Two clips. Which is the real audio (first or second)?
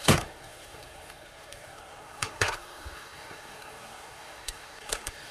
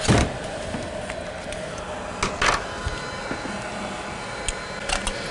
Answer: second